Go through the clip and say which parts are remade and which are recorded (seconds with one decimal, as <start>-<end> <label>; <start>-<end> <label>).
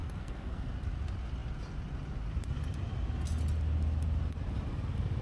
0.0-0.7 remade; 0.7-5.2 recorded